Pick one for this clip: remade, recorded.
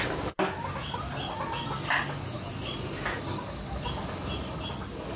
recorded